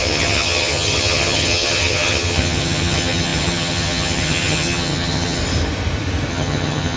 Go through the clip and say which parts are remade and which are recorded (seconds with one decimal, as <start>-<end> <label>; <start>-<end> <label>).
0.0-5.4 remade; 5.4-6.3 recorded; 6.3-7.0 remade

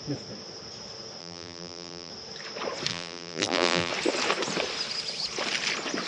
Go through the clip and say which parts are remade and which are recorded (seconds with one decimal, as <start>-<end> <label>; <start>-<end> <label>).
0.0-1.2 recorded; 1.2-2.1 remade; 2.1-2.9 recorded; 2.9-3.9 remade; 3.9-6.1 recorded

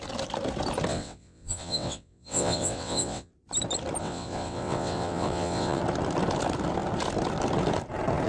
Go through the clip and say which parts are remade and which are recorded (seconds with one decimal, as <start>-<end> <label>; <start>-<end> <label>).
0.0-0.9 recorded; 0.9-3.3 remade; 3.3-4.0 recorded; 4.0-5.8 remade; 5.8-8.3 recorded

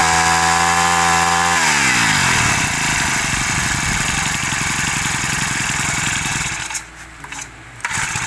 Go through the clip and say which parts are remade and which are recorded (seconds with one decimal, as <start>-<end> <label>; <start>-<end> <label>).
0.0-8.3 recorded

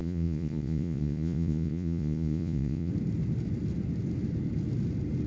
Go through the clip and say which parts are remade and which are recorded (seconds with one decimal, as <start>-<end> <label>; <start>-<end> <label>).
0.0-2.9 remade; 2.9-5.3 recorded

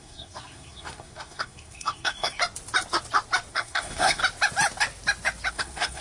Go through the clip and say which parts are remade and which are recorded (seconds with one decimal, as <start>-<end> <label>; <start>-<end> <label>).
0.0-2.4 remade; 2.4-3.5 recorded; 3.5-4.2 remade; 4.2-5.5 recorded; 5.5-6.0 remade